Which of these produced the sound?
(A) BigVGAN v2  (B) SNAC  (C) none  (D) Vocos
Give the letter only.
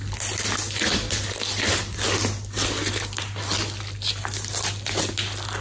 C